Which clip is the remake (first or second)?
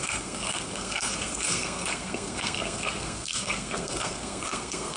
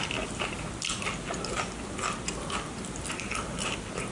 first